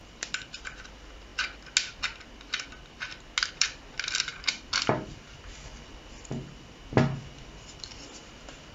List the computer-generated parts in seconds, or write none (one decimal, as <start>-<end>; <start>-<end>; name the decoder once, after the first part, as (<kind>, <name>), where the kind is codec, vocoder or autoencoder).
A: 0.0-1.3 (vocoder, BigVGAN v2); 3.5-8.7